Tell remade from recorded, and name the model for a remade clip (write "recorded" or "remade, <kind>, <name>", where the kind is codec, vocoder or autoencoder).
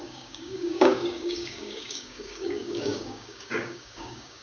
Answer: remade, codec, DAC